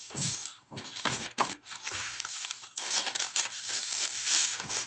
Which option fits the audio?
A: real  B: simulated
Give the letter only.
B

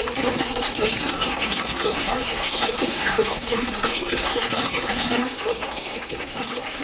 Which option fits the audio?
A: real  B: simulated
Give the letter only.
B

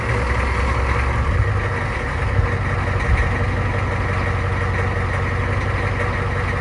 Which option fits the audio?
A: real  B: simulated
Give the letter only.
A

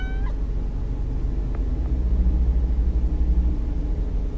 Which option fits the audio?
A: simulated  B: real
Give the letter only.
B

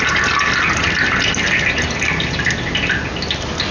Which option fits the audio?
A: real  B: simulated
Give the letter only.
B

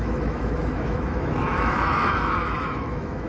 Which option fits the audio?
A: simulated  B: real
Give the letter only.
A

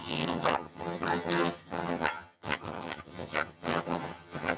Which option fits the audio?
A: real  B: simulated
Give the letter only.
B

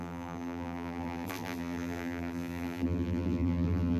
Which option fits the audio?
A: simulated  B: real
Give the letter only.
A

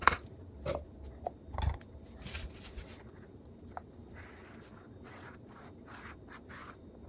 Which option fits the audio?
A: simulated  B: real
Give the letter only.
B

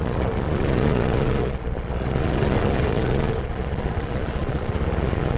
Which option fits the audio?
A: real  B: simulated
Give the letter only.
B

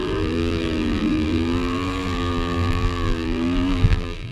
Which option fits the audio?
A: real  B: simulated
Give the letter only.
B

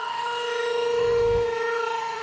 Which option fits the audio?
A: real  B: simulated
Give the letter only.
B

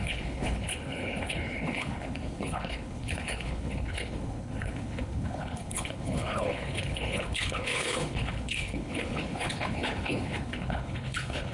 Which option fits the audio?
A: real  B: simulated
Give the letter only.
B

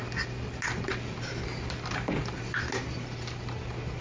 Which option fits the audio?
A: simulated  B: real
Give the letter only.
B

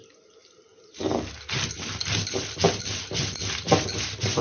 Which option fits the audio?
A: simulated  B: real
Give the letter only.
B